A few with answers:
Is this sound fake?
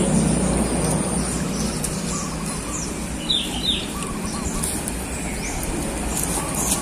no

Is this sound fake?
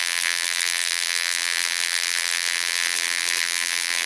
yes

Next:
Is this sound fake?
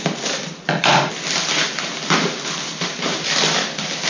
no